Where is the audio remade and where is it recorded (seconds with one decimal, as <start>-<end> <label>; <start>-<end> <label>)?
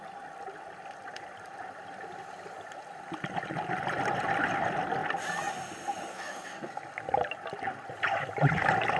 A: 0.0-6.1 recorded; 6.1-6.8 remade; 6.8-9.0 recorded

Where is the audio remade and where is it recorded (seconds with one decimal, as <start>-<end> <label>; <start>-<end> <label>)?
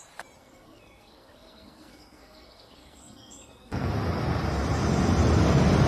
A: 0.0-0.4 recorded; 0.4-3.9 remade; 3.9-5.9 recorded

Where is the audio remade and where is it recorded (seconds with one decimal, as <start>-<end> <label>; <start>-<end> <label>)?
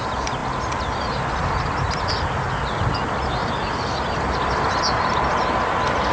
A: 0.0-6.1 recorded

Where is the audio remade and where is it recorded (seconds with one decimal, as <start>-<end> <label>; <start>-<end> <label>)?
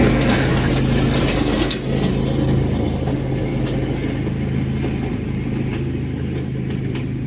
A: 0.0-0.7 remade; 0.7-1.3 recorded; 1.3-2.1 remade; 2.1-7.3 recorded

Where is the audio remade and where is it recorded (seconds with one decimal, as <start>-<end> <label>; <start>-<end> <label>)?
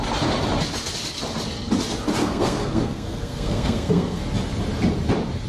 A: 0.0-2.2 recorded; 2.2-4.2 remade; 4.2-5.5 recorded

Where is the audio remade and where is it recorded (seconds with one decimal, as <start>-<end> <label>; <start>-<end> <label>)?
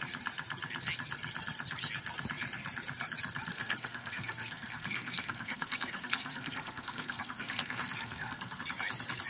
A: 0.0-3.5 recorded; 3.5-8.6 remade; 8.6-9.3 recorded